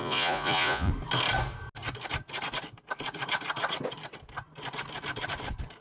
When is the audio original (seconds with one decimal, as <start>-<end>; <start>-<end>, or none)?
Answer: 0.9-5.8